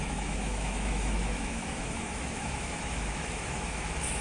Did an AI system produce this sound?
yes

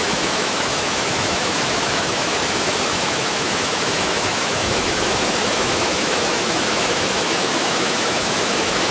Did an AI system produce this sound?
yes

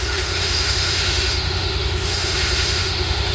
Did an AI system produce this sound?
yes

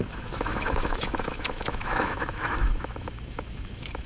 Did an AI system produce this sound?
yes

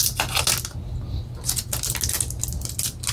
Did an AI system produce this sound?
no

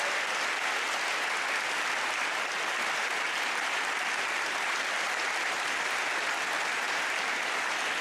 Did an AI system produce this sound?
no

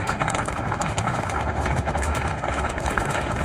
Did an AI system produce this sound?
yes